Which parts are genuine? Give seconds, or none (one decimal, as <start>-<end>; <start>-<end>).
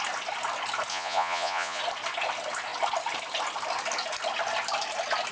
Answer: 0.0-0.9; 1.8-5.3